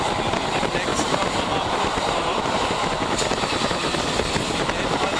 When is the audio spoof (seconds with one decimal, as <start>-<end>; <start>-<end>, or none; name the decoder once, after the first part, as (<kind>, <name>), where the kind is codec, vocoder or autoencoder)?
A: 0.9-2.4 (vocoder, BigVGAN v2)